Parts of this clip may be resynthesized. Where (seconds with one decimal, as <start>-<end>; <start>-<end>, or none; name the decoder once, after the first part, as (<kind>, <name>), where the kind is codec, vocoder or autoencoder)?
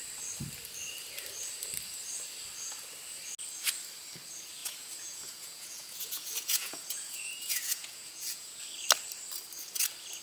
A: 4.6-8.6 (vocoder, Vocos)